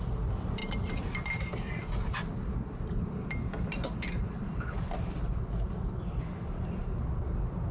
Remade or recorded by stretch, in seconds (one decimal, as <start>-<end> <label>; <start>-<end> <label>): 0.0-7.7 recorded